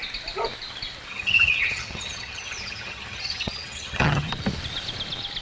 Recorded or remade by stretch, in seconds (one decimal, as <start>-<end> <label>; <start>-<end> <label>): 0.0-1.1 recorded; 1.1-4.3 remade; 4.3-5.4 recorded